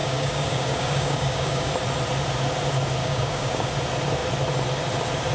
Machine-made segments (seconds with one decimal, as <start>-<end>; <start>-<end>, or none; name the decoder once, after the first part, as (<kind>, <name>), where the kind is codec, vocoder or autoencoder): 0.0-1.7 (codec, DAC); 3.0-3.7